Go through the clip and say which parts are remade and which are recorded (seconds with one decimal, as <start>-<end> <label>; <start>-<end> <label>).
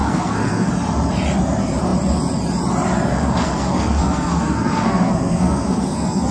0.0-0.7 remade; 0.7-3.1 recorded; 3.1-6.3 remade